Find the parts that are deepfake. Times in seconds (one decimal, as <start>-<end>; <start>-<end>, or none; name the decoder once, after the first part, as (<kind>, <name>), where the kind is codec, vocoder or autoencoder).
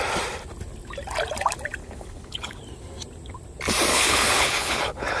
1.8-2.6 (codec, HILCodec); 3.9-5.2